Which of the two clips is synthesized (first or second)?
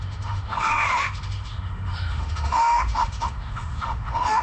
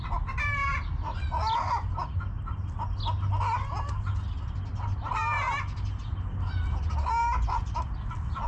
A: first